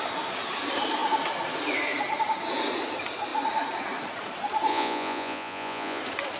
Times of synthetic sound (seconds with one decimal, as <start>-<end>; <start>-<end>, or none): 4.7-6.0